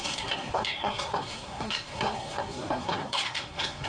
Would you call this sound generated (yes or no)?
yes